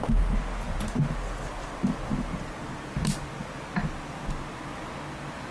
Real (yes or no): yes